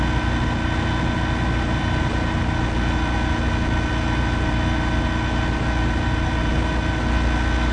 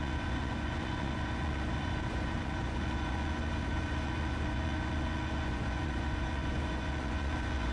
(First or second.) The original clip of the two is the first